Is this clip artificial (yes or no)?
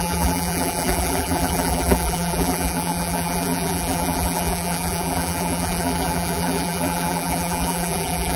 yes